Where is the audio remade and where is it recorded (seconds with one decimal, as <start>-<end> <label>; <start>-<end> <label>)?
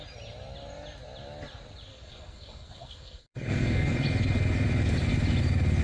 0.0-1.9 recorded; 1.9-3.9 remade; 3.9-5.8 recorded